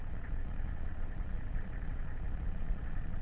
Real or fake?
fake